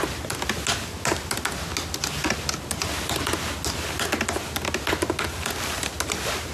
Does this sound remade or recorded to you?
recorded